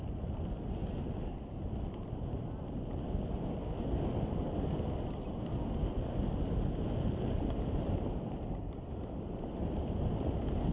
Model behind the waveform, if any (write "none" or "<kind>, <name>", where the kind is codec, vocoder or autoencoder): none